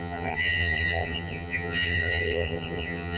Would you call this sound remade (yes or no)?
yes